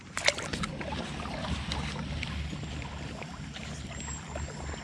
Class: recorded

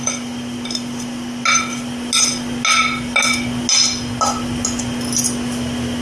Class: recorded